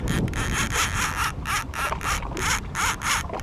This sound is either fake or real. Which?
real